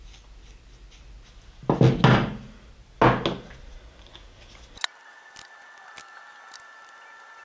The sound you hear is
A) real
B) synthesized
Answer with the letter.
A